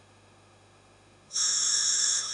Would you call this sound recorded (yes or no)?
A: no